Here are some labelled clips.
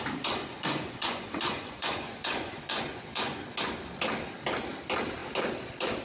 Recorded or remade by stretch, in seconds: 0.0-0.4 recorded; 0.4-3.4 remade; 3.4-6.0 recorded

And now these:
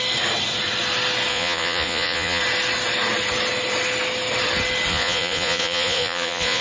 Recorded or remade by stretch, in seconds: 0.0-1.3 recorded; 1.3-2.4 remade; 2.4-4.9 recorded; 4.9-6.6 remade